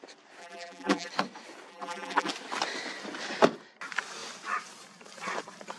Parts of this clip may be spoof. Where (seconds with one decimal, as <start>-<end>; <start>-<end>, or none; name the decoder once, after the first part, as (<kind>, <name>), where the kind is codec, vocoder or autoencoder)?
0.4-1.1 (vocoder, BigVGAN v2); 1.7-2.3